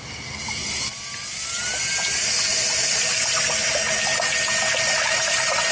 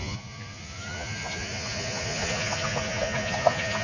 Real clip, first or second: first